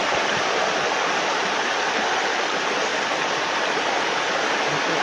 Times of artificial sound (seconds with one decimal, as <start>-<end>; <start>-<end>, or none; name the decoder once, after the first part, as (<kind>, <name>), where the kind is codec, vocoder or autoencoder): 0.0-2.1 (vocoder, BigVGAN v2); 2.9-3.9